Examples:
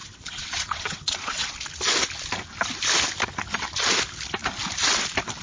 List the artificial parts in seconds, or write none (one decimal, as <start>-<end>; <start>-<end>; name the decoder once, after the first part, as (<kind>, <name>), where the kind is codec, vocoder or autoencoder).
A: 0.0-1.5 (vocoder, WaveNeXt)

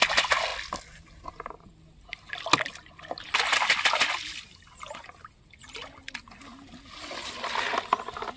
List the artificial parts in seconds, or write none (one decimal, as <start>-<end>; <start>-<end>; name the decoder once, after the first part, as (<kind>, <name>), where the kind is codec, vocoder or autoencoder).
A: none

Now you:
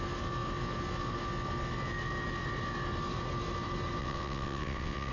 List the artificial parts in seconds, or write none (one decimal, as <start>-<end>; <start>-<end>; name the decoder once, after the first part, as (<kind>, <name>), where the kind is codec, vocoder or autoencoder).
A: 4.0-5.1 (vocoder, WaveNeXt)

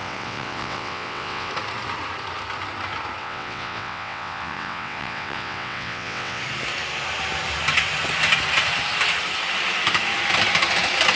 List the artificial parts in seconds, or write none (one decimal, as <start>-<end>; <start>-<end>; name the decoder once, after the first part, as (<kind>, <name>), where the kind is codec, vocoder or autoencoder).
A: 0.0-1.5 (vocoder, WaveNeXt); 3.2-6.4

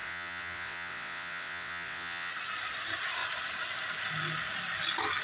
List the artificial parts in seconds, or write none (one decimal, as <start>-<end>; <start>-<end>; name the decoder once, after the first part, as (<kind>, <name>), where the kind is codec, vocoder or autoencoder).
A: 0.0-2.3 (vocoder, WaveNeXt)

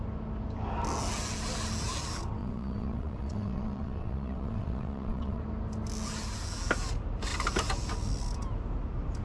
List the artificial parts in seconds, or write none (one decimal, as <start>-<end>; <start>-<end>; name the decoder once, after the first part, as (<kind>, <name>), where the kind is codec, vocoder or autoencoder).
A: 2.4-5.4 (vocoder, WaveNeXt)